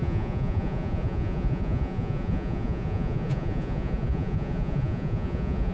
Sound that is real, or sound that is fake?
fake